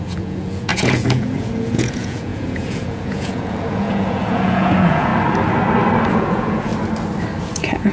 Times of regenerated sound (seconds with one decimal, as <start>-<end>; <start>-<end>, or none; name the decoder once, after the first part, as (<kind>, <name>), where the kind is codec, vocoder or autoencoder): 0.0-5.1 (vocoder, Vocos); 6.1-6.7; 7.4-7.9